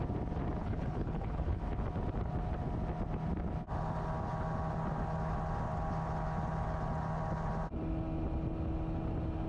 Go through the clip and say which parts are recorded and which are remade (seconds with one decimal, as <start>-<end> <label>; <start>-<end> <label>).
0.0-0.6 recorded; 0.6-1.6 remade; 1.6-9.5 recorded